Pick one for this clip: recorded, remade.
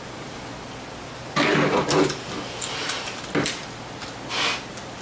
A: recorded